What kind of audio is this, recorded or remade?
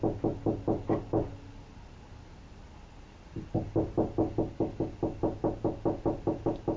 recorded